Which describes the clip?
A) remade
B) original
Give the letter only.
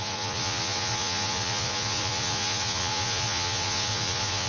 A